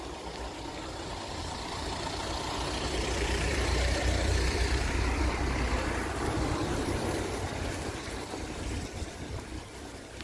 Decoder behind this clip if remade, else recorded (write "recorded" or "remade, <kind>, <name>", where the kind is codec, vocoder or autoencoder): remade, vocoder, BigVGAN v2